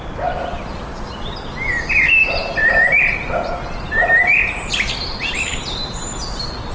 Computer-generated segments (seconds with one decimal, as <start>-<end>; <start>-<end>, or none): none